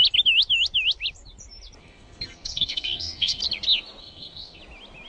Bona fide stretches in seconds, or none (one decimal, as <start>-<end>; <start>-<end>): 0.0-1.8; 3.4-4.0; 4.6-5.1